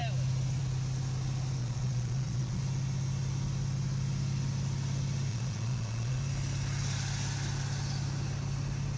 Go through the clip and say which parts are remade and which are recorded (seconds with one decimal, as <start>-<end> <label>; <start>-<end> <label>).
0.0-1.6 recorded; 1.6-2.6 remade; 2.6-5.3 recorded; 5.3-6.2 remade; 6.2-9.0 recorded